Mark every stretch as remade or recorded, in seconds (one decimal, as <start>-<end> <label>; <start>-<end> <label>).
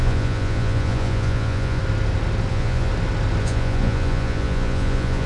0.0-1.8 remade; 1.8-2.5 recorded; 2.5-2.9 remade; 2.9-3.4 recorded; 3.4-5.3 remade